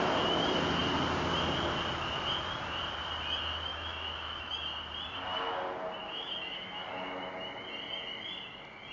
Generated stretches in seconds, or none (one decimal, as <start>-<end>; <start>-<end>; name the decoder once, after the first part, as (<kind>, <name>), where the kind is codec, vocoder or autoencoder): 3.7-4.5 (autoencoder, DAC-VAE); 6.0-6.8